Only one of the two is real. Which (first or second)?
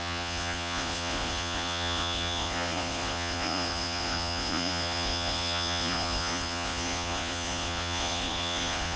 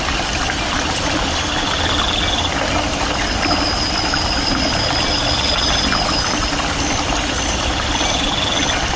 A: second